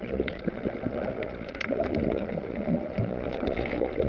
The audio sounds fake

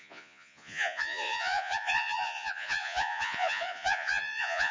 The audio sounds fake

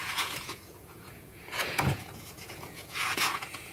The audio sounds fake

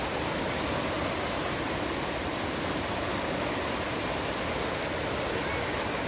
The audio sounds real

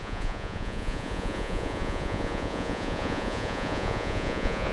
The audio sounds fake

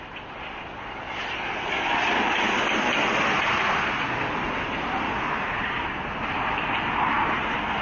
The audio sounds real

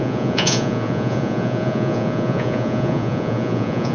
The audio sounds fake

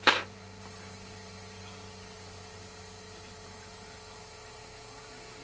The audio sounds real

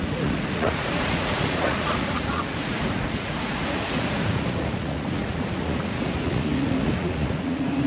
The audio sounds fake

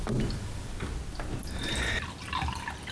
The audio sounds real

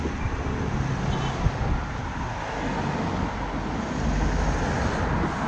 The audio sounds real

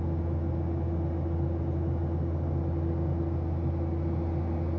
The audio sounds real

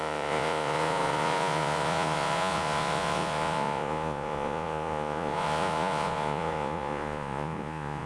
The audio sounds fake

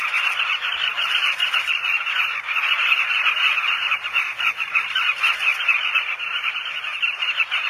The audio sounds real